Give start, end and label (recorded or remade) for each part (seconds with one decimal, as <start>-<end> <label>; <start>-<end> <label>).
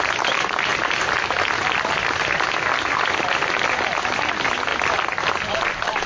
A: 0.0-6.1 recorded